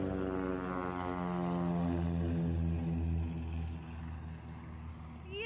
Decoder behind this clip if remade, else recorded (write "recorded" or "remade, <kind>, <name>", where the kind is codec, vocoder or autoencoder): recorded